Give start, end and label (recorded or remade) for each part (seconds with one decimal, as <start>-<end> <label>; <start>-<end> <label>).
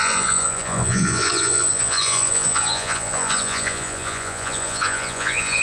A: 0.0-5.6 remade